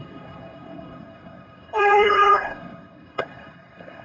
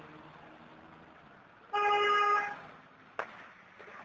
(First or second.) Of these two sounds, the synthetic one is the first